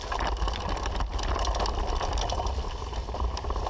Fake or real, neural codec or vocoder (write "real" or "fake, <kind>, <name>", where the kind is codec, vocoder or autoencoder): real